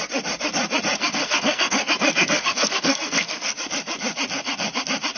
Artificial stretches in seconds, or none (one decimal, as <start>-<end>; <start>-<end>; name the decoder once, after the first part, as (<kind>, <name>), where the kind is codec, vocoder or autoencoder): 1.0-3.5 (codec, SNAC)